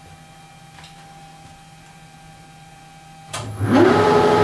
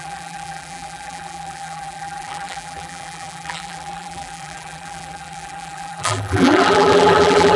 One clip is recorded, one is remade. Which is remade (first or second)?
second